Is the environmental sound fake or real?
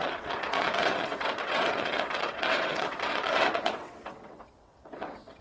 fake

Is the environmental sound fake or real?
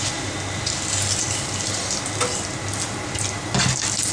real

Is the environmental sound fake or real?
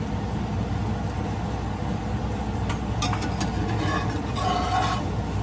real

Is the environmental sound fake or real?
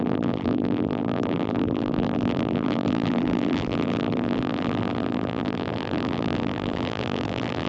fake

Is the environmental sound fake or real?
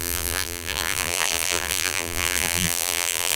fake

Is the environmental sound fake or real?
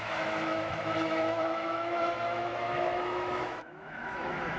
fake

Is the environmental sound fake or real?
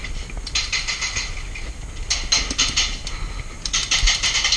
real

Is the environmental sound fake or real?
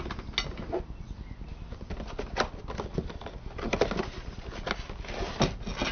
real